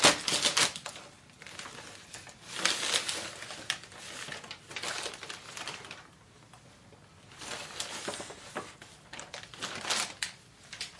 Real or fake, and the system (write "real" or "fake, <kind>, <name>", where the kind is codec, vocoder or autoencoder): real